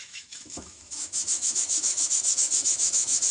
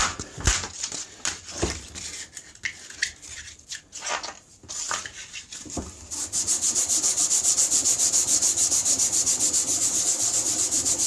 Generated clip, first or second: first